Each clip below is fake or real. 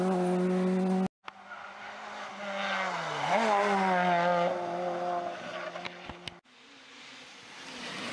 real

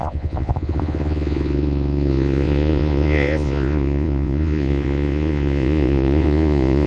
fake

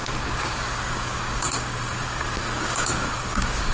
fake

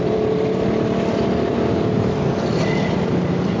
real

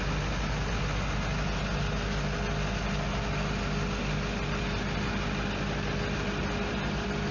real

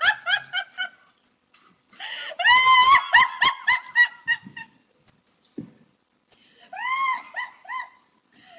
real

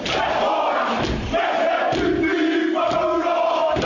real